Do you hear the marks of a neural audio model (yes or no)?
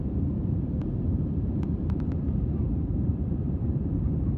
yes